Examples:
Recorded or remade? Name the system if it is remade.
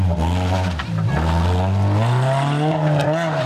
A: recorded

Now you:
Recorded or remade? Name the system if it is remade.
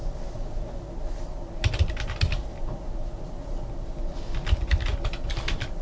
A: recorded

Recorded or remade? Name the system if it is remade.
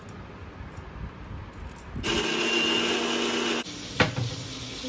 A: recorded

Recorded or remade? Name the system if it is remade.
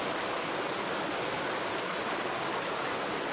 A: recorded